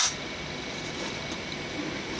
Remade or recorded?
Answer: recorded